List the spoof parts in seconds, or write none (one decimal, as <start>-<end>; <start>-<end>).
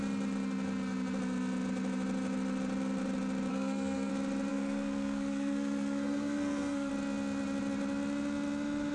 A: 3.5-4.1; 4.5-6.9